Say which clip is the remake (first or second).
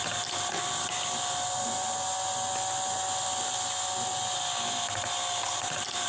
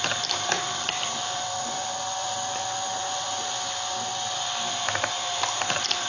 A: second